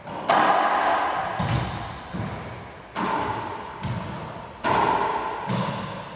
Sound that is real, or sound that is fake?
real